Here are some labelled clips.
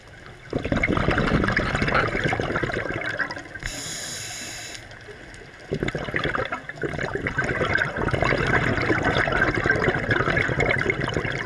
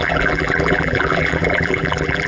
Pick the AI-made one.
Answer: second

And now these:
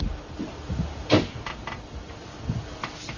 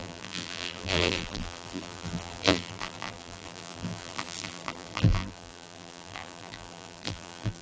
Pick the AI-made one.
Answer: second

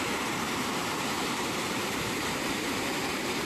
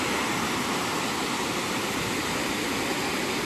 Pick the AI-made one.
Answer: first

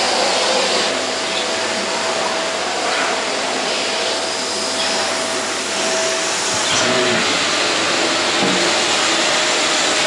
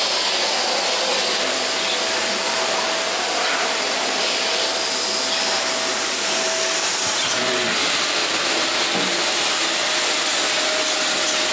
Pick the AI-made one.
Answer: second